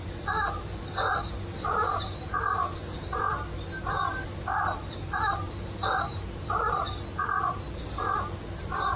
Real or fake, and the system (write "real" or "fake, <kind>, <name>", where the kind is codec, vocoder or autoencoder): fake, vocoder, BigVGAN v2